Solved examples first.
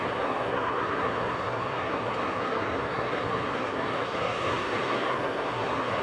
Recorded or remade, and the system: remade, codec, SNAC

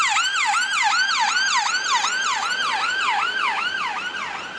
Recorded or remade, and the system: recorded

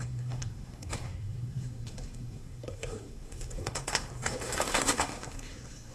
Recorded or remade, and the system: remade, codec, SNAC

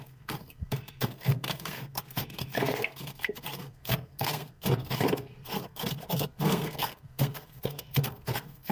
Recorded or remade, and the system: remade, codec, SNAC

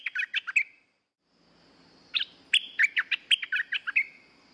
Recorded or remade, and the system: recorded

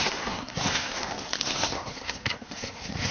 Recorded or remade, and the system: remade, codec, SNAC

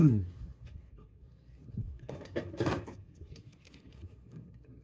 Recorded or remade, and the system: remade, codec, SNAC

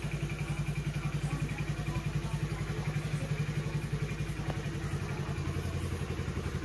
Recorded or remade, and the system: recorded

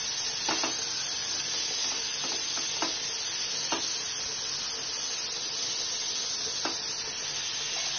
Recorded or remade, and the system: recorded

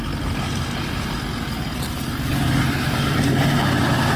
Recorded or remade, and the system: recorded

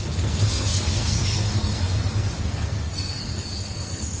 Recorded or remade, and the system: remade, codec, SNAC